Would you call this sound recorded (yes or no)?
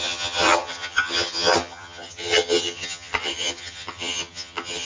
no